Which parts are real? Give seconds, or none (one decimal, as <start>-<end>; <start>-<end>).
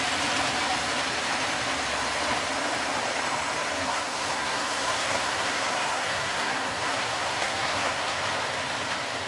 0.0-3.8; 8.2-9.3